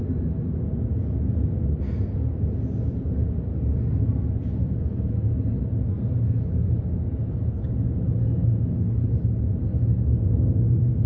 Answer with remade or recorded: recorded